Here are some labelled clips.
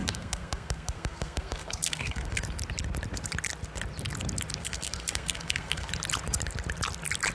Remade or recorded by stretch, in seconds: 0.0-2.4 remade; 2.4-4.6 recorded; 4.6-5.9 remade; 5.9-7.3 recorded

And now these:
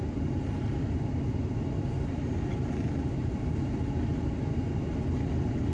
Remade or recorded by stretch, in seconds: 0.0-5.7 recorded

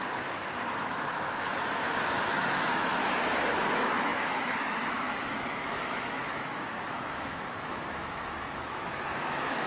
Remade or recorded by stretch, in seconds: 0.0-3.0 remade; 3.0-3.6 recorded; 3.6-9.7 remade

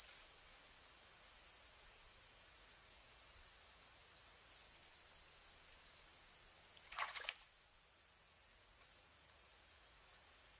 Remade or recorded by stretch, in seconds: 0.0-4.8 remade; 4.8-6.9 recorded; 6.9-10.6 remade